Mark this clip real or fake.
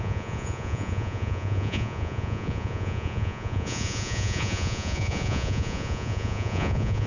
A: fake